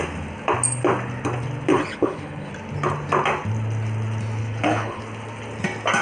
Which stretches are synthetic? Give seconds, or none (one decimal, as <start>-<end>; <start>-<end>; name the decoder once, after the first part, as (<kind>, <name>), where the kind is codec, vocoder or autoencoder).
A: 1.7-2.5 (codec, HILCodec); 4.4-5.0